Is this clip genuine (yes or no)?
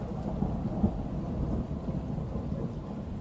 yes